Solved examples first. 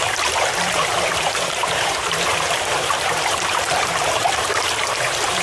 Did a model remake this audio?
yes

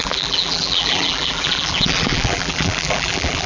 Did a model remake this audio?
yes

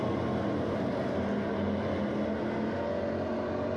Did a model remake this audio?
no